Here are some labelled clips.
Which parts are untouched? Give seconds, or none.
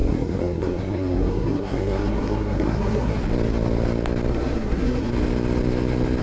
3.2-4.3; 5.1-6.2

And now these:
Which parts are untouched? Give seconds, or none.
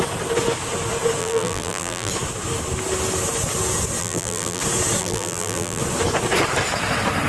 0.0-1.2; 2.1-4.0; 4.6-5.0; 5.8-7.3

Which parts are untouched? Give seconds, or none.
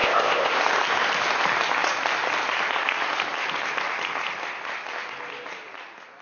0.6-6.2